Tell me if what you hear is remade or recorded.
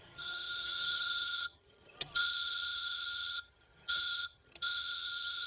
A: remade